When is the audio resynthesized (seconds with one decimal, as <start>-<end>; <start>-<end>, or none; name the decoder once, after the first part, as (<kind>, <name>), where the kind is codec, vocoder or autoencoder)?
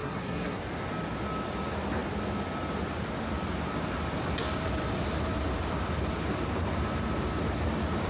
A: 0.0-0.6 (codec, SNAC)